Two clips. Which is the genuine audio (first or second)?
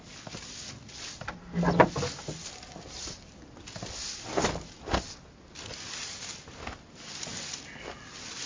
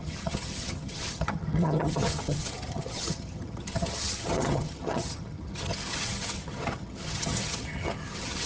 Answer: first